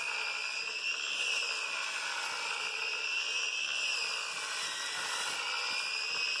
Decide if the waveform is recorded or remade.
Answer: recorded